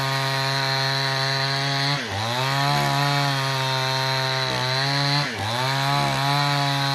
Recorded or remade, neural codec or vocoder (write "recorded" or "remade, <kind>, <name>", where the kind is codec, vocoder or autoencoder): recorded